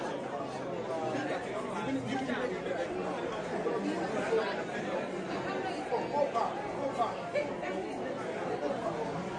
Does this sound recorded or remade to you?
recorded